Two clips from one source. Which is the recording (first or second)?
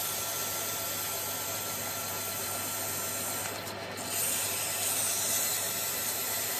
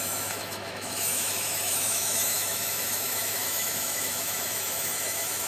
first